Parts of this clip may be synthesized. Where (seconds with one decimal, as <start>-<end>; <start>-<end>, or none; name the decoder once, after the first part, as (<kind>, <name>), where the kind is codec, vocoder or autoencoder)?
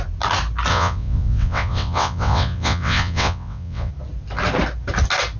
0.7-3.9 (vocoder, WaveNeXt)